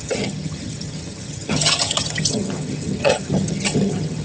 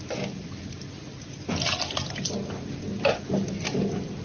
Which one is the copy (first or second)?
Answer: first